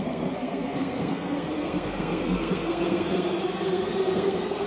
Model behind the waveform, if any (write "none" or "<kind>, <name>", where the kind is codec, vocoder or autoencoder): codec, SNAC